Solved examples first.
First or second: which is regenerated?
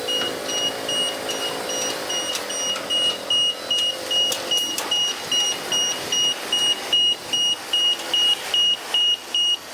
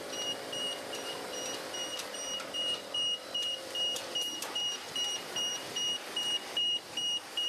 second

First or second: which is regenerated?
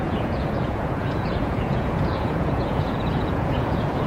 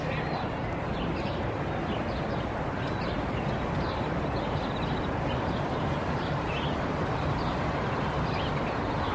first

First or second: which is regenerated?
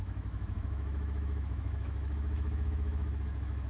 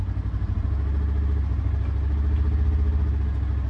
first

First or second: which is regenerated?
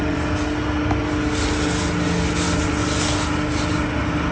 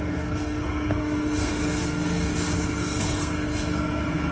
second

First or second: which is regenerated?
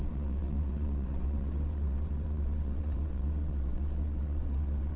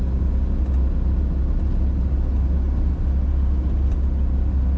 first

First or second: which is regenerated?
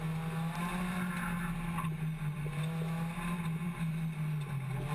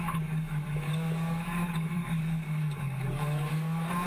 second